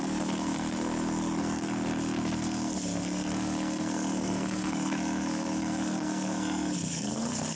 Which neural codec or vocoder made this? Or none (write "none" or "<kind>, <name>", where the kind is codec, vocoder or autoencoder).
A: codec, SNAC